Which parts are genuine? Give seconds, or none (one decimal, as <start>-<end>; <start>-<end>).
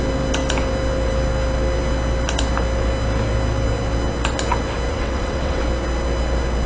0.0-4.9; 5.6-6.7